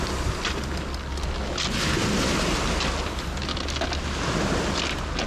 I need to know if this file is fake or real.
real